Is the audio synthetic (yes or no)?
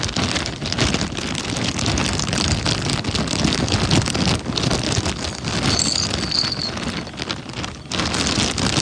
no